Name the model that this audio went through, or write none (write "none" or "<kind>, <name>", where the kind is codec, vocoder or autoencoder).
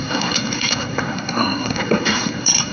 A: codec, SNAC